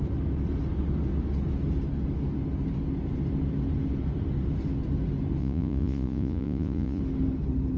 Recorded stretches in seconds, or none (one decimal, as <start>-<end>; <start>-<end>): 0.0-5.4; 7.0-7.8